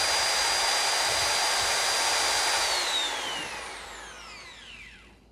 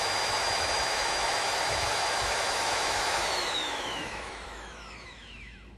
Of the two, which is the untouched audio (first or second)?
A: first